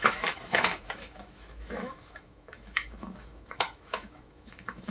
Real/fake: fake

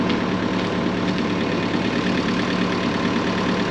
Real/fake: real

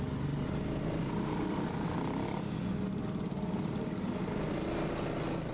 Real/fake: real